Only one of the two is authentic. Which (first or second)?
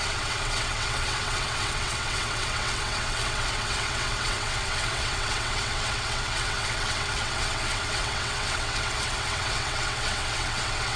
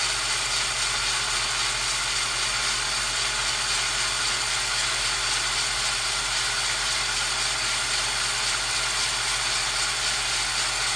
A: second